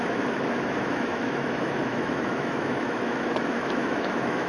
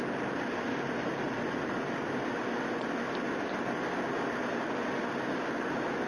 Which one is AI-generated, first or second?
first